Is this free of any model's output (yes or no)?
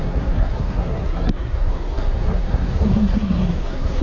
no